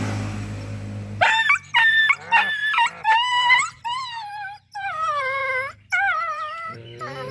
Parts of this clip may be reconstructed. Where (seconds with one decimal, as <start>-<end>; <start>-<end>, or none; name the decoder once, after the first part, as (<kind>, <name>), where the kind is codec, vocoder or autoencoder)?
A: 0.0-5.4 (vocoder, BigVGAN v2); 6.0-7.3